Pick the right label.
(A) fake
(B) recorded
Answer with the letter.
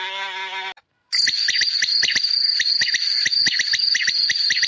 B